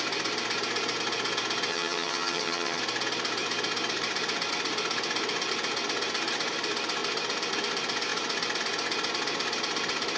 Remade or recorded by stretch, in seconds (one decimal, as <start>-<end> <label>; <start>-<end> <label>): 0.0-1.7 recorded; 1.7-2.8 remade; 2.8-10.2 recorded